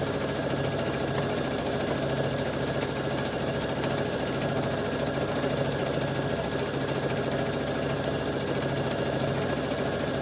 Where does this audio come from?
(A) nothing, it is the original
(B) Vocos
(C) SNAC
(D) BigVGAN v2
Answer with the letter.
A